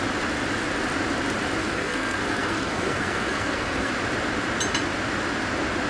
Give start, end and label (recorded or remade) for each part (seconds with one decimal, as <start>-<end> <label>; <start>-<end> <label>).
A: 0.0-1.6 recorded; 1.6-3.9 remade; 3.9-5.9 recorded